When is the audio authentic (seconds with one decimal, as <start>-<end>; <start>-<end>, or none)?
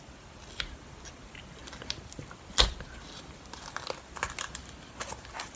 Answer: 0.0-5.6